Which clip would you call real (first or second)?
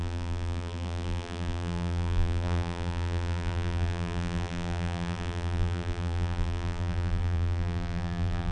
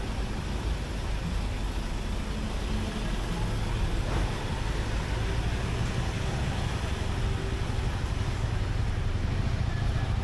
second